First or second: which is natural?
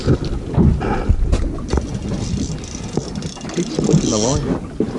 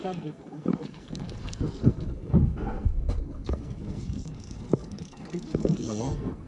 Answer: first